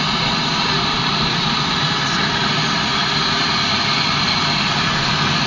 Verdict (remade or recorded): recorded